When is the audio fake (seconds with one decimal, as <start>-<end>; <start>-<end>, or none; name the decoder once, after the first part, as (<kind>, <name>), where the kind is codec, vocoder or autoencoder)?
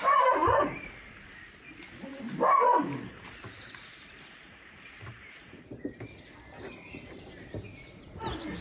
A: 0.4-1.3 (vocoder, BigVGAN v2); 2.1-5.6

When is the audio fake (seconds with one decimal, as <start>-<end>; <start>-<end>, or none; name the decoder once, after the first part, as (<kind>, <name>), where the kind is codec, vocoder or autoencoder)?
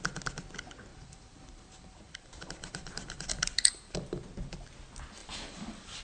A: 0.9-4.2 (vocoder, BigVGAN v2); 5.2-6.0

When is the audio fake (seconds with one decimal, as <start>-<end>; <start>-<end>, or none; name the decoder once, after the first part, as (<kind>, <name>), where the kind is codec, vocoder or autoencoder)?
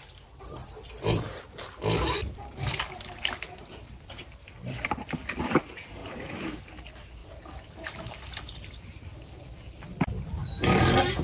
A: 0.0-10.4 (vocoder, BigVGAN v2)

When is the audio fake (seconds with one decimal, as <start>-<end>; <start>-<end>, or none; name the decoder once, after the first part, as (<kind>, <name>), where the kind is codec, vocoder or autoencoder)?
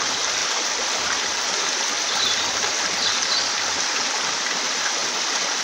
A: 5.0-5.6 (vocoder, BigVGAN v2)